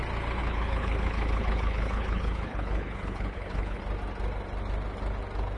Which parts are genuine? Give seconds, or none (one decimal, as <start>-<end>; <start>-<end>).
0.0-0.4; 3.8-5.6